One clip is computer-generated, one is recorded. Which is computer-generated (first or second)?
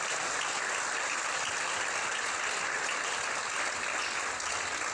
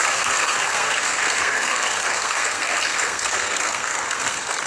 second